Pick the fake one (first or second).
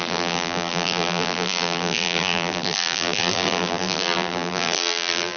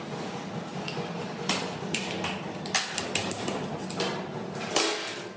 first